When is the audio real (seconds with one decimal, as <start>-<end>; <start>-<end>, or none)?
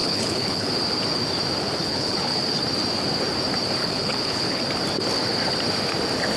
0.7-1.8; 2.4-3.8; 4.6-6.4